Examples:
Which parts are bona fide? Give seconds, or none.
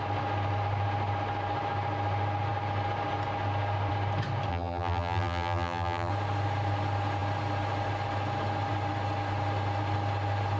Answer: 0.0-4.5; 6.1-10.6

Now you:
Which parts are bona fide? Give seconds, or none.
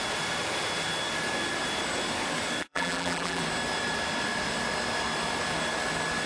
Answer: 0.0-2.6; 3.4-6.3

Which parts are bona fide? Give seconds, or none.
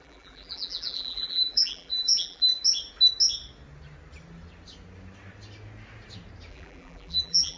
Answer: 2.5-6.5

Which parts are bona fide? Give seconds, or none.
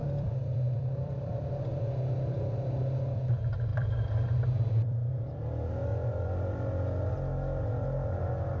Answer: 1.8-3.7; 5.1-5.9; 7.1-8.6